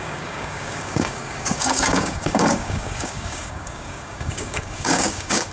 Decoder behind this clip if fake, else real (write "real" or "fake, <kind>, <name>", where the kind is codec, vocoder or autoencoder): fake, codec, DAC